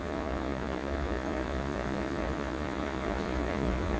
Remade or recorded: remade